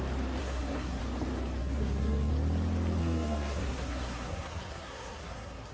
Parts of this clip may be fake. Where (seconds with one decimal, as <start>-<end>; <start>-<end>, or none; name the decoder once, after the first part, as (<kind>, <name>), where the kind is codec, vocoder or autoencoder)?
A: 0.4-1.0 (codec, SNAC); 1.6-2.3; 3.0-5.7

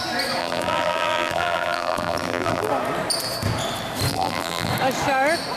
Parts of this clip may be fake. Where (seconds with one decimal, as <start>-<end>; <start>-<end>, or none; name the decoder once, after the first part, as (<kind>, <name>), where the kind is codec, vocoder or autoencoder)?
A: 0.4-2.7 (vocoder, BigVGAN v2); 4.1-4.7

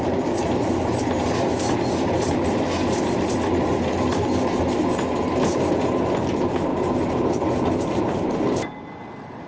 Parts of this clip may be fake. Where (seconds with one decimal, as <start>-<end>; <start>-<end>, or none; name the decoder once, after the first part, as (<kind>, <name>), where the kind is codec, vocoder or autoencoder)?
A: none

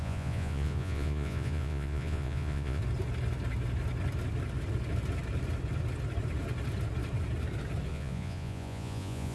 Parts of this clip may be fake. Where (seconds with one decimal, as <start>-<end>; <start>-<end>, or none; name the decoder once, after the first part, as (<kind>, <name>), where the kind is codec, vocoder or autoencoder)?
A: 0.0-2.8 (vocoder, Vocos); 7.9-9.3

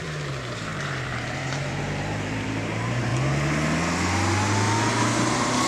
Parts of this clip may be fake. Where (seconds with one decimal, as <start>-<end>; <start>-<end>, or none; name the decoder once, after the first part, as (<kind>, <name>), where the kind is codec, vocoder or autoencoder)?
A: 0.0-3.1 (vocoder, BigVGAN v2); 4.9-5.7